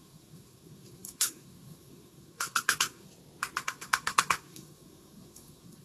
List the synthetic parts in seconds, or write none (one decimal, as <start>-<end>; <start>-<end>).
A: 0.0-3.1; 3.6-5.8

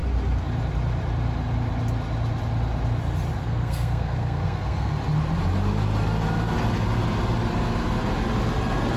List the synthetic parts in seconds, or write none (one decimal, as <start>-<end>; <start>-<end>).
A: 3.4-4.9

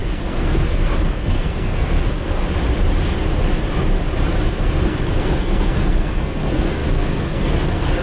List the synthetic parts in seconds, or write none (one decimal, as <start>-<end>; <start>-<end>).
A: 0.0-2.4; 4.5-8.0

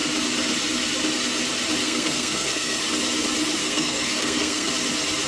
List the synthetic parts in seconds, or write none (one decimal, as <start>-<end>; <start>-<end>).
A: 1.8-2.8; 3.6-4.7

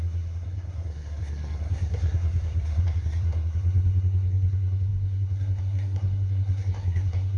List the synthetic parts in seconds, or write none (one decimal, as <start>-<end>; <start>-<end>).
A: 0.0-7.4